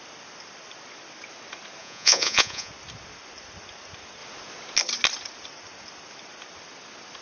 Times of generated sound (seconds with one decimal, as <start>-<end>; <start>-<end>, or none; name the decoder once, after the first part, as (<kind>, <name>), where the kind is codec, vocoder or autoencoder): 1.8-2.7 (vocoder, Vocos)